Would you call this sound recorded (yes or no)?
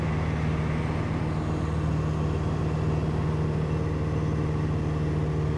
yes